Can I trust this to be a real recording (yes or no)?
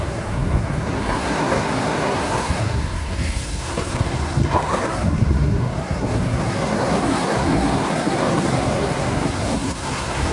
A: no